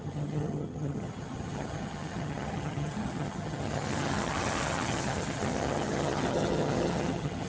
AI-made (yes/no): yes